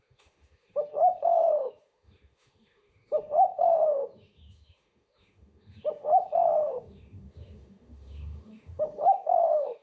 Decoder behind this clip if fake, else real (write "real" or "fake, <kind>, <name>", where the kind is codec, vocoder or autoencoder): fake, autoencoder, DAC-VAE